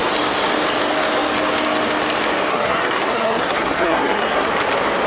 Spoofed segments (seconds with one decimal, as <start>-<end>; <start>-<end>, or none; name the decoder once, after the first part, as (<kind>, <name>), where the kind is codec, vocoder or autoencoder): 2.5-4.5 (codec, SNAC)